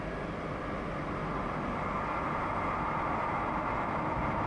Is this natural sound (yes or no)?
yes